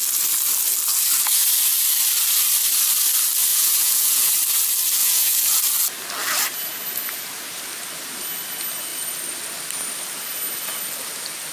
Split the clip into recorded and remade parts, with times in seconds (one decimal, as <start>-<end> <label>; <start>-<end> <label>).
0.0-3.5 recorded; 3.5-4.3 remade; 4.3-5.0 recorded; 5.0-5.6 remade; 5.6-11.5 recorded